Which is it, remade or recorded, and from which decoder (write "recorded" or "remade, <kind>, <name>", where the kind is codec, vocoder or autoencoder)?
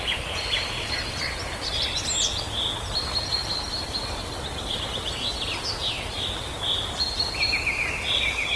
recorded